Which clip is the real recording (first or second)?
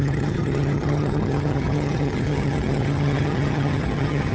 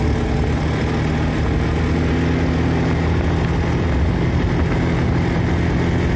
second